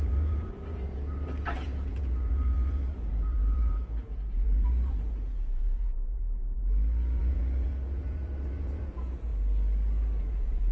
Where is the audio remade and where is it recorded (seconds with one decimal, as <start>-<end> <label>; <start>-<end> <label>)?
0.0-6.6 remade; 6.6-7.2 recorded; 7.2-9.3 remade; 9.3-10.2 recorded; 10.2-10.7 remade